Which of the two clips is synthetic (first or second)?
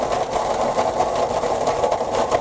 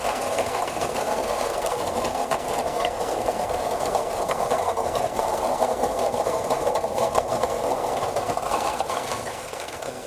second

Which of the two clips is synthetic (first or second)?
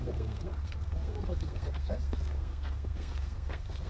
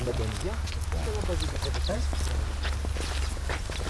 first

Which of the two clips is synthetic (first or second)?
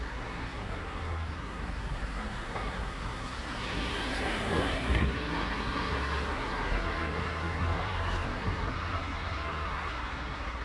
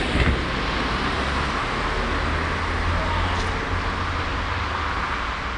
first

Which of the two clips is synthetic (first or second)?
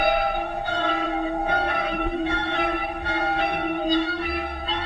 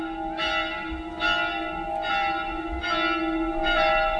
first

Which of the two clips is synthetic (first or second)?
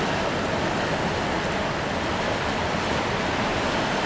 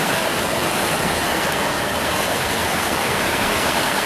second